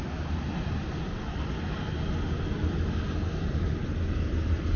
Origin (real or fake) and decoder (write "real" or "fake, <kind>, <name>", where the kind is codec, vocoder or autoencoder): real